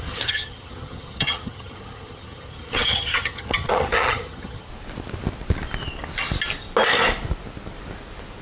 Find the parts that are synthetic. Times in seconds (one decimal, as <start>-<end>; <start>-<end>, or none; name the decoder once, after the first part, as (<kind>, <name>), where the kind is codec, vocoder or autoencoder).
0.0-4.7 (vocoder, HiFi-GAN)